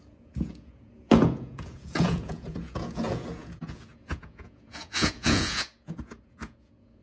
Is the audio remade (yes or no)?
yes